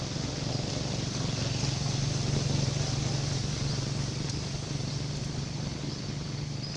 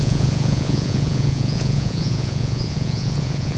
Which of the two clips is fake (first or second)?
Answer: second